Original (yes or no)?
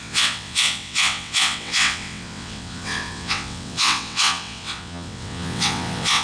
no